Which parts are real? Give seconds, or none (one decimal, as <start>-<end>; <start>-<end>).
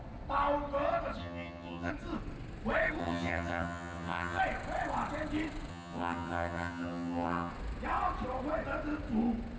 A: 0.0-1.2; 1.9-3.0; 4.4-5.7; 7.5-9.6